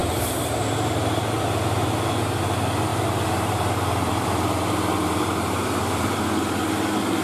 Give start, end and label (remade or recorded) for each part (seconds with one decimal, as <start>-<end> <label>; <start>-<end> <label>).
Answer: 0.0-0.7 remade; 0.7-2.9 recorded; 2.9-6.2 remade; 6.2-7.2 recorded